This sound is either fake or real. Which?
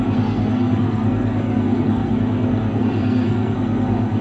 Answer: fake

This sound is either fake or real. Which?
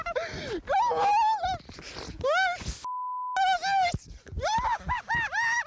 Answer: real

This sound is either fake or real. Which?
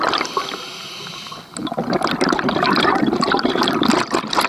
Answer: real